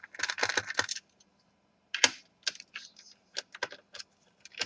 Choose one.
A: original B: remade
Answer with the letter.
A